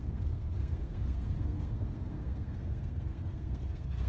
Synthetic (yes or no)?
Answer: yes